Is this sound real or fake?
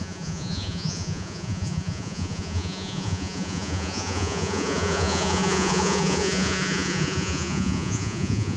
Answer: fake